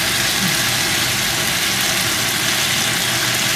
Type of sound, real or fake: real